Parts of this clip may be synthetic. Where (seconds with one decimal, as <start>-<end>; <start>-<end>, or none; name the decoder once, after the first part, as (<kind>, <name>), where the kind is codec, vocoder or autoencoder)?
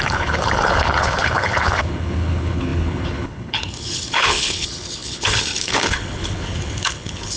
0.0-7.4 (codec, HILCodec)